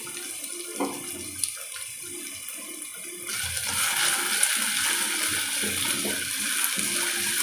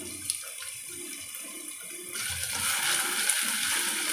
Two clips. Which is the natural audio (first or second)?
first